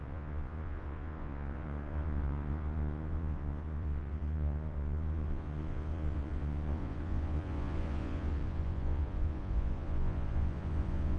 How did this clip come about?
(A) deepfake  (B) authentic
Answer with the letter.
A